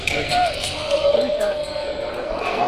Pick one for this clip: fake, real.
fake